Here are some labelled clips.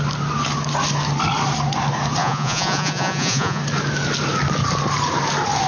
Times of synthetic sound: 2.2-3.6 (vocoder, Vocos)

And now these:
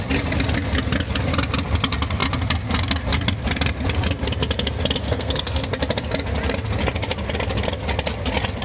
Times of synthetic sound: 5.0-5.7 (codec, SNAC)